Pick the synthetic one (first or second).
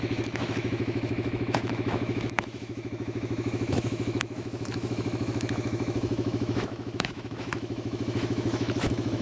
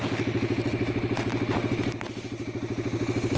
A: first